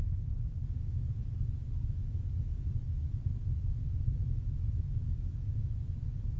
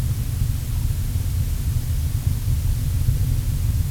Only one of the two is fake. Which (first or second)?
first